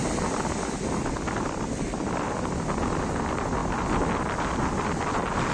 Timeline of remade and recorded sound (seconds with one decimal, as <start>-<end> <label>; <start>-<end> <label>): 0.0-5.5 recorded